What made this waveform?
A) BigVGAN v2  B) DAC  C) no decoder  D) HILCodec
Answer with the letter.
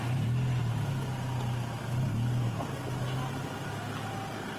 C